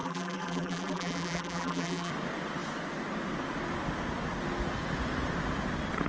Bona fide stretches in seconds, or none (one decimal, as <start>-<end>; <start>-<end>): 2.1-6.1